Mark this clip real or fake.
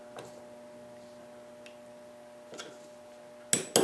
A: real